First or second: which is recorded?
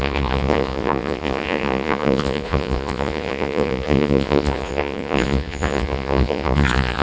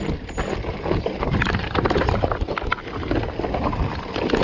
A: second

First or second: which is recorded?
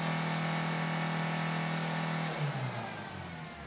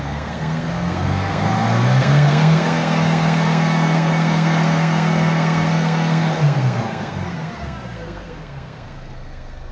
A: first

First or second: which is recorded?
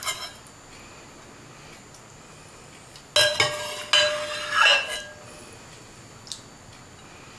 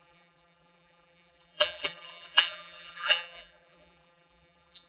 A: first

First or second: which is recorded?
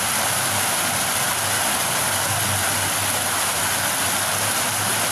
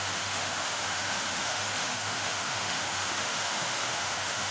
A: first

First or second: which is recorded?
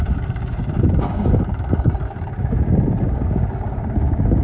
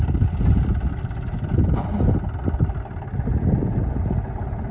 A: second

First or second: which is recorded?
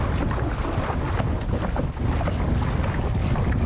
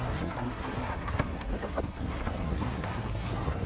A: first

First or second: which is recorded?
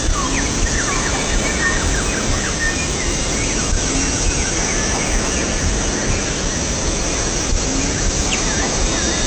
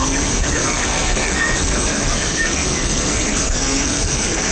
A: first